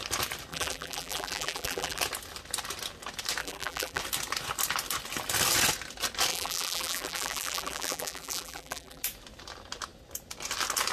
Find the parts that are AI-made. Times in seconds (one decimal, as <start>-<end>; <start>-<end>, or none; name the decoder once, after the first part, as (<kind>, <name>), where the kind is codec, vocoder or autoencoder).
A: 0.5-2.0 (vocoder, BigVGAN v2); 3.4-4.0; 6.3-9.0